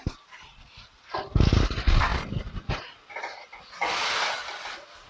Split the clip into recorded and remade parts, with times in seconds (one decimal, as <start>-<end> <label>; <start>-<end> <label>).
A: 0.0-5.1 recorded